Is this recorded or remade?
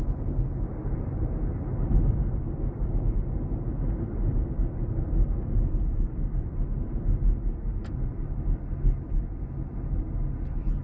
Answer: recorded